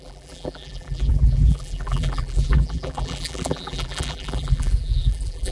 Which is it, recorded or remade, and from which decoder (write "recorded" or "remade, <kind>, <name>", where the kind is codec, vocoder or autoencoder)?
remade, vocoder, BigVGAN v2